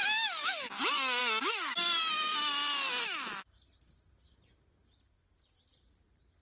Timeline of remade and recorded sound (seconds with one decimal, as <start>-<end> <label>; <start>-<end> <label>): 0.0-2.5 remade; 2.5-6.4 recorded